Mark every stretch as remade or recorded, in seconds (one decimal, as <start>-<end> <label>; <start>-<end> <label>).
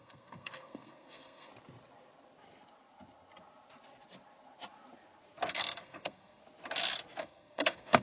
0.0-1.5 remade; 1.5-5.5 recorded; 5.5-6.4 remade; 6.4-7.2 recorded; 7.2-8.0 remade